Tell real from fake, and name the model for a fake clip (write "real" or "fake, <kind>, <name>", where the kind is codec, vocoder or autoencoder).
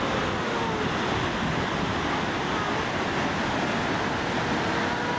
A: real